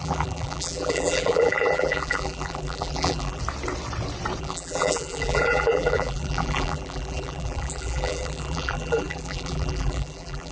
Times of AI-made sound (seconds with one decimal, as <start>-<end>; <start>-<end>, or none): 0.0-3.4; 4.4-10.5